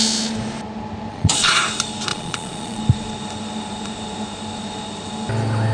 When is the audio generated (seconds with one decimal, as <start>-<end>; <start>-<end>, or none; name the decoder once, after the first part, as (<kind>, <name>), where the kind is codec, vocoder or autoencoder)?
1.1-1.6 (vocoder, Vocos); 2.1-2.8